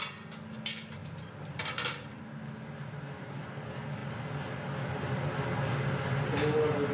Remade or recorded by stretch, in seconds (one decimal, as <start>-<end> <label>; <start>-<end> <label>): 0.0-1.0 recorded; 1.0-2.2 remade; 2.2-6.9 recorded